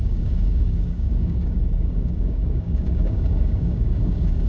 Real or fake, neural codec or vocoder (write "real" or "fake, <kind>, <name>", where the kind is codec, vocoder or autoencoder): fake, codec, DAC